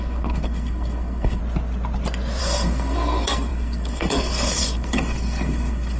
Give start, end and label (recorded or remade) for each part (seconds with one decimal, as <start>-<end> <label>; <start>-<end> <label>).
0.0-1.4 remade; 1.4-2.4 recorded; 2.4-6.0 remade